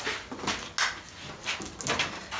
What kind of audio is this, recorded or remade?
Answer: recorded